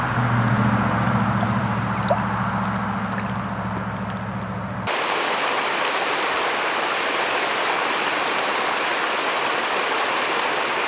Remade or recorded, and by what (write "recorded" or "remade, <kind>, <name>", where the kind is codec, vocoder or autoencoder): recorded